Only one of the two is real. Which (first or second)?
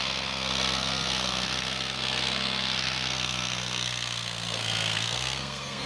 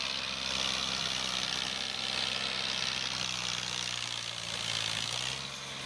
second